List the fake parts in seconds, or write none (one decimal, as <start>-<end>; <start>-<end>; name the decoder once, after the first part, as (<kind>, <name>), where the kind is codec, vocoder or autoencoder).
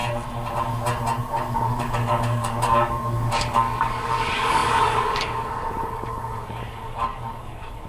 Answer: 1.2-7.9 (codec, DAC)